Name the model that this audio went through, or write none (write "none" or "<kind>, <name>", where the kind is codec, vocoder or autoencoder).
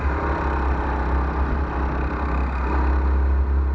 none